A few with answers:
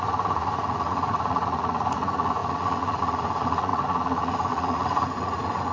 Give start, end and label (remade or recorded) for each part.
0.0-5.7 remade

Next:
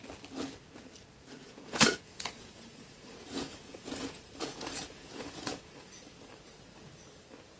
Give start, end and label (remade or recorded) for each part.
0.0-1.4 recorded; 1.4-6.0 remade; 6.0-7.6 recorded

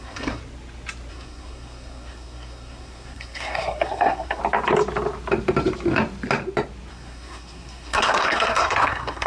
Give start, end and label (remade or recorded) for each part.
0.0-0.4 remade; 0.4-1.1 recorded; 1.1-4.4 remade; 4.4-6.9 recorded; 6.9-9.3 remade

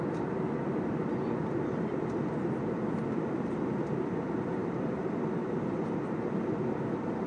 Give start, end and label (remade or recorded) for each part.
0.0-7.3 remade

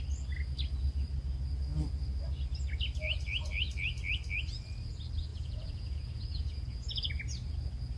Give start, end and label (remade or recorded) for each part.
0.0-5.3 recorded; 5.3-7.1 remade; 7.1-8.0 recorded

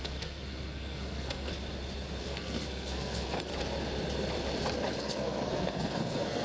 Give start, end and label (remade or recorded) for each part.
0.0-1.5 remade; 1.5-2.2 recorded; 2.2-3.5 remade; 3.5-5.0 recorded; 5.0-6.4 remade